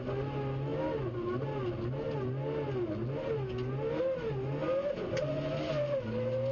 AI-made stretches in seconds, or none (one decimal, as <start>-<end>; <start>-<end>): none

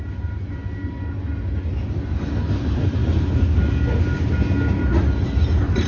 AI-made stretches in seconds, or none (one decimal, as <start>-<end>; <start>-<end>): none

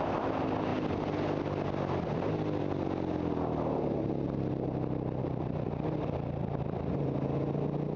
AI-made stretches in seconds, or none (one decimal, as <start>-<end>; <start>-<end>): none

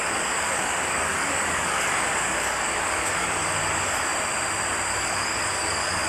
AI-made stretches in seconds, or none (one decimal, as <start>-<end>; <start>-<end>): 0.0-4.1; 4.9-6.1

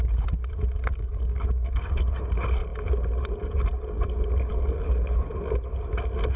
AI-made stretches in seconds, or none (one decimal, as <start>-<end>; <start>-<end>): 0.9-1.9